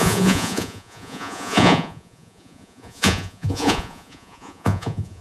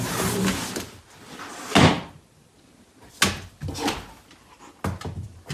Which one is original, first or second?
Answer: second